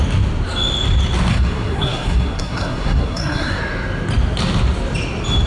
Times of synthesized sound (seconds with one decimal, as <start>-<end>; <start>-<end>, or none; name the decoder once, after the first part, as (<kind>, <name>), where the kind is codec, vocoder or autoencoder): 1.3-3.6 (codec, SNAC)